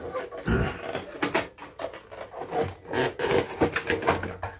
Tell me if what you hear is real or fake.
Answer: real